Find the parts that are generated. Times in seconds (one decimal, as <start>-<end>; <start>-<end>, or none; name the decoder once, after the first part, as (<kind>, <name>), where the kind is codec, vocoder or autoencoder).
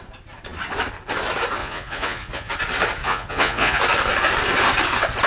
1.6-2.5 (vocoder, Vocos); 3.0-3.8